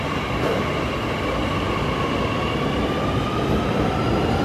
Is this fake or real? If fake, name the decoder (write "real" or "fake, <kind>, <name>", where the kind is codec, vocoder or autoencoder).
real